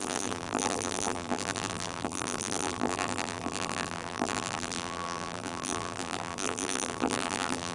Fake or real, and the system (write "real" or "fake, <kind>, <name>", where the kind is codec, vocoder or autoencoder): fake, vocoder, BigVGAN v2